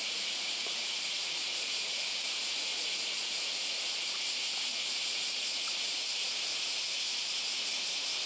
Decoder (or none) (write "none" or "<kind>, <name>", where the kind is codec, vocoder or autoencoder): vocoder, Vocos